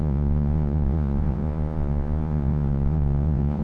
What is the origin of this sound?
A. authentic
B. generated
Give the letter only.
B